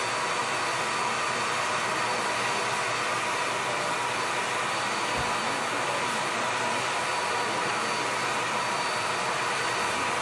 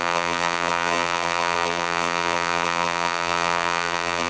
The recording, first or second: first